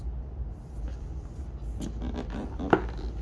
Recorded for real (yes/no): yes